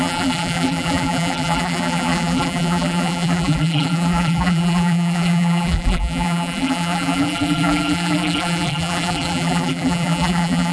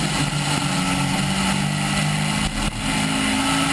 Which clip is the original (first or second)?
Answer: second